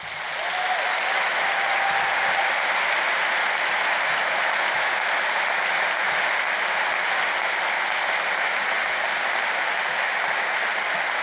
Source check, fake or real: real